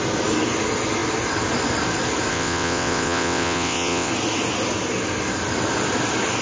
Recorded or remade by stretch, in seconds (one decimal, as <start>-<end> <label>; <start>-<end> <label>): 0.0-2.3 recorded; 2.3-4.1 remade; 4.1-6.4 recorded